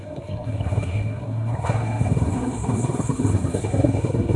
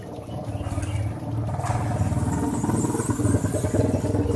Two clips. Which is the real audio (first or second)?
second